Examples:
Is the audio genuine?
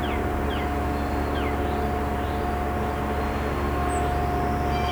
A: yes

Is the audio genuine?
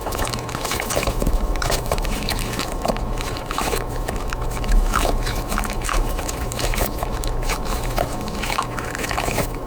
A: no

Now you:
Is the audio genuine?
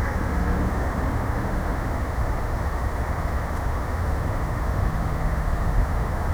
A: no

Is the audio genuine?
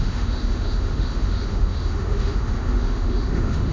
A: no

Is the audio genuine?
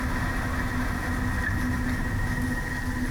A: yes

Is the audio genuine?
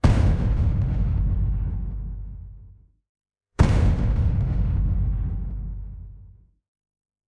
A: no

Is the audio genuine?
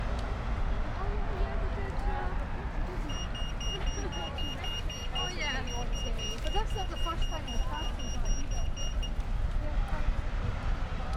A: yes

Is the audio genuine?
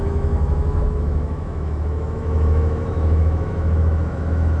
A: no